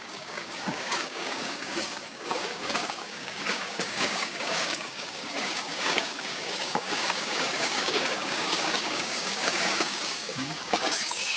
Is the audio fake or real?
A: fake